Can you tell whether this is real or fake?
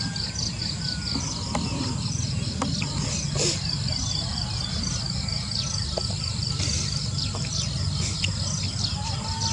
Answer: real